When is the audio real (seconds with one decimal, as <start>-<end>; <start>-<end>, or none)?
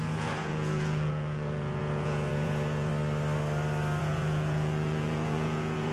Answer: 2.9-4.0